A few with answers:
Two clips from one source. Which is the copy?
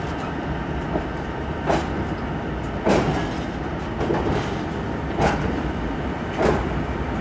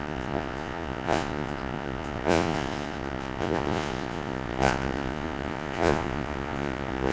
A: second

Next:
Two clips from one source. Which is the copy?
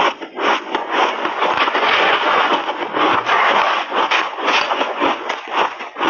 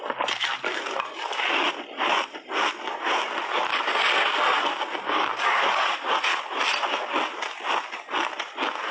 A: first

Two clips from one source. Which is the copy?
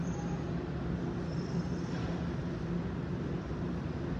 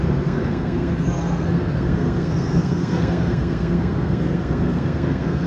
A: second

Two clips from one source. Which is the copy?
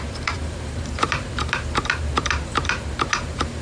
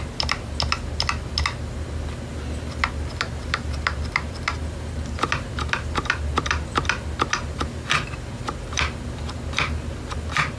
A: first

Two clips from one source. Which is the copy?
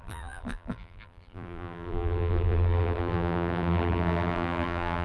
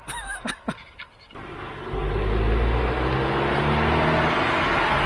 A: first